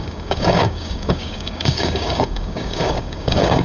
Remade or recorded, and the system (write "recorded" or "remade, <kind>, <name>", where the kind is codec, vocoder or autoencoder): remade, codec, DAC